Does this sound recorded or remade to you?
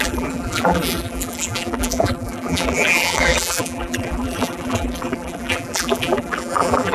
remade